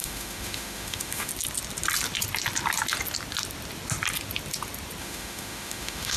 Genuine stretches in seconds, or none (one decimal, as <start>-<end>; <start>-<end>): 1.3-5.0